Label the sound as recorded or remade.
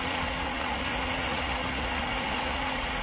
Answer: remade